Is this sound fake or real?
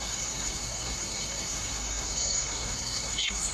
fake